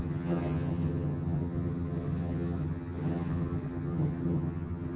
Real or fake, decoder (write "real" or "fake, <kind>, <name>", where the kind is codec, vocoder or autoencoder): fake, vocoder, HiFi-GAN